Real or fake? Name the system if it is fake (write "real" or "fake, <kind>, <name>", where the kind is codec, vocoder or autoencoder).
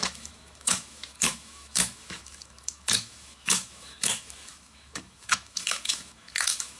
fake, autoencoder, DAC-VAE